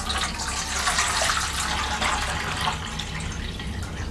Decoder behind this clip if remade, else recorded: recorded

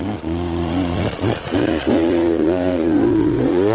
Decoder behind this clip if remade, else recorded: remade, vocoder, Vocos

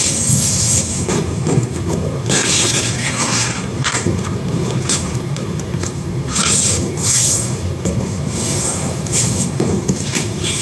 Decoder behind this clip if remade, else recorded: remade, codec, SNAC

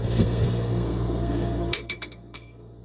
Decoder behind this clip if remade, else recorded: remade, codec, SNAC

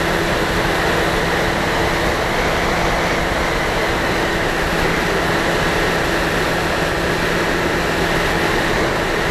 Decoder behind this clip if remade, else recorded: recorded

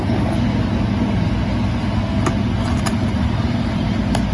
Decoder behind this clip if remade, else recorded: recorded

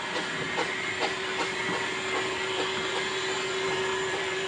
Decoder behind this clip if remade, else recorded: remade, vocoder, BigVGAN v2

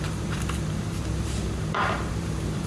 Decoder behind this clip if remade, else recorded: remade, vocoder, BigVGAN v2